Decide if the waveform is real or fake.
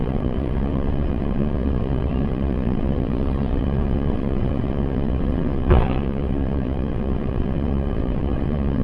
fake